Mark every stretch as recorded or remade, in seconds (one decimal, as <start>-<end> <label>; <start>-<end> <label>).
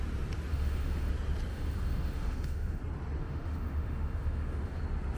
0.0-0.5 recorded; 0.5-1.1 remade; 1.1-1.5 recorded; 1.5-2.8 remade; 2.8-3.2 recorded; 3.2-4.8 remade; 4.8-5.2 recorded